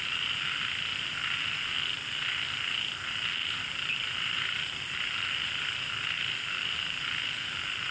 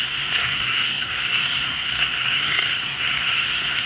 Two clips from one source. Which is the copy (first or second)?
second